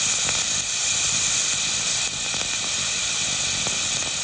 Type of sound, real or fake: real